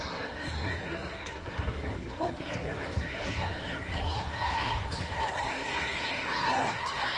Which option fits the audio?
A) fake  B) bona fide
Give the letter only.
A